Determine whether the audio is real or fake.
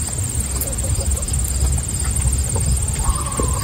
real